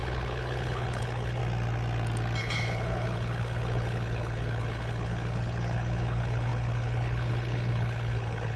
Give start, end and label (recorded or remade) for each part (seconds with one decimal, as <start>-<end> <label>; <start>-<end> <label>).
0.0-1.4 remade; 1.4-2.4 recorded; 2.4-8.6 remade